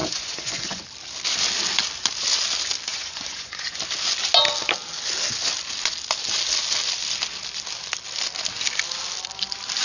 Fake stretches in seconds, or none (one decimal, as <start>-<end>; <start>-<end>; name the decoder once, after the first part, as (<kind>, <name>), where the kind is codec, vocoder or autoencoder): 0.0-0.8 (vocoder, Vocos); 2.9-3.8